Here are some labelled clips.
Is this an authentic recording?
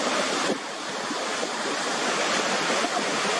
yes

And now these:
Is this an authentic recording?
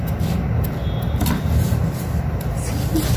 no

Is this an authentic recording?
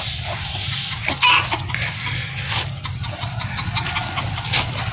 yes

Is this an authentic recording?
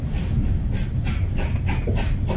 yes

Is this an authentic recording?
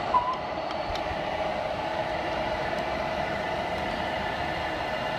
no